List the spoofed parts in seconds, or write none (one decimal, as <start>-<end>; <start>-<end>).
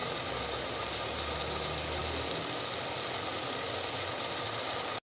none